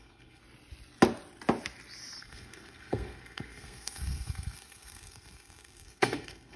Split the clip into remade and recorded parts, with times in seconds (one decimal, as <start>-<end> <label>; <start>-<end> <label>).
0.0-0.4 remade; 0.4-2.2 recorded; 2.2-6.6 remade